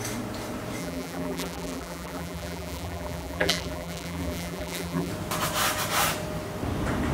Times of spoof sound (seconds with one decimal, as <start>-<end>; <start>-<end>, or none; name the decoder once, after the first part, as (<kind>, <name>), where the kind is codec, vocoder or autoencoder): 0.8-5.1 (vocoder, BigVGAN v2)